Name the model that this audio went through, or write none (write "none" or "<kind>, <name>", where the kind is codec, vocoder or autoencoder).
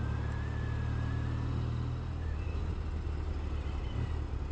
none